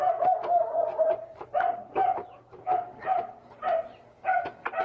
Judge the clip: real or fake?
real